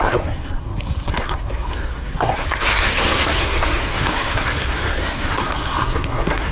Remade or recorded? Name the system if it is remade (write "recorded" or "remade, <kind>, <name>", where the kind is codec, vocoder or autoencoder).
remade, codec, SNAC